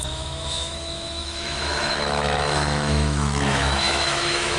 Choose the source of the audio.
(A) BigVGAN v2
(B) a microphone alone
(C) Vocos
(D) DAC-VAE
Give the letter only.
D